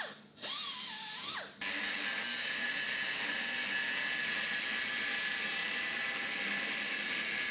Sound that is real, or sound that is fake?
real